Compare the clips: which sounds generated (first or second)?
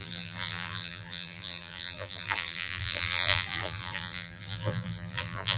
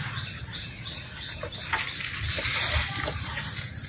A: first